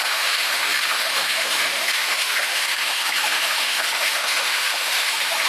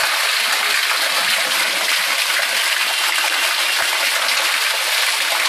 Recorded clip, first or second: second